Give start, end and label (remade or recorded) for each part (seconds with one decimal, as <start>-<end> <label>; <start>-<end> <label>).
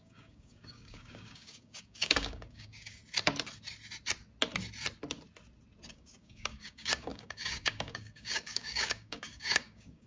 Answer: 0.0-3.0 remade; 3.0-5.9 recorded; 5.9-10.1 remade